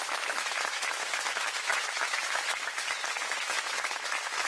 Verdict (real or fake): fake